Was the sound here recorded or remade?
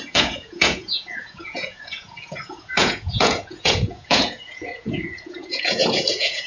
remade